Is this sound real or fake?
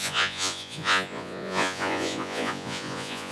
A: fake